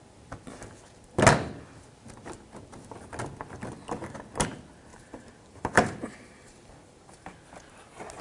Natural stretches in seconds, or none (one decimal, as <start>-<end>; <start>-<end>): 0.0-4.9; 7.7-8.2